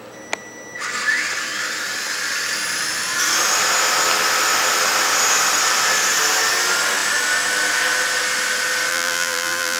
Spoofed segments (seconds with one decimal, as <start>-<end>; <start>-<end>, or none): 8.9-9.8